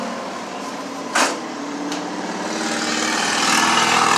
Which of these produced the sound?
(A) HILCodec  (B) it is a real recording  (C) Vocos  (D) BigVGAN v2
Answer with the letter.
B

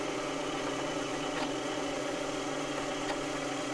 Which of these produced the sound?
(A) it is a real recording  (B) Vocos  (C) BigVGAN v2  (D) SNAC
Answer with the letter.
B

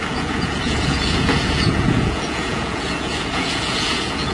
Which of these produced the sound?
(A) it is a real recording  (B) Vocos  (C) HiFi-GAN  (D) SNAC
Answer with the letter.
B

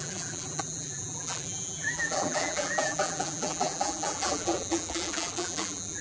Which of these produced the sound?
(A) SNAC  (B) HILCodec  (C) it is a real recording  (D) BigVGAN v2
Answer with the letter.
D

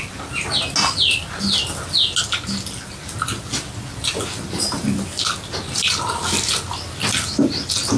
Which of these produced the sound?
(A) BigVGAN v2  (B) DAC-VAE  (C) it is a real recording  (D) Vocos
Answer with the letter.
C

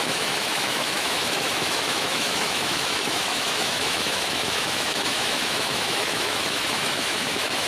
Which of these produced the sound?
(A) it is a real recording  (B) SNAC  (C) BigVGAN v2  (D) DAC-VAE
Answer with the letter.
D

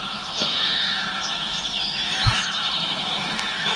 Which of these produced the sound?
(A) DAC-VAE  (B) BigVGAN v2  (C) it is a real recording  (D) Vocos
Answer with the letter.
A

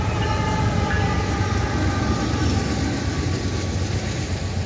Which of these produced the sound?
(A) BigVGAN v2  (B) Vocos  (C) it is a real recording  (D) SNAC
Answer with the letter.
C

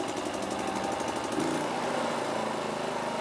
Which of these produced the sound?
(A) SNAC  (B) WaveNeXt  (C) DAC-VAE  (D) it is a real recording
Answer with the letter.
D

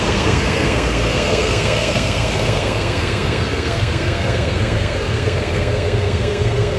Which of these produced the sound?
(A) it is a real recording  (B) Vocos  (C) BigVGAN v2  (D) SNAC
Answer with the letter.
D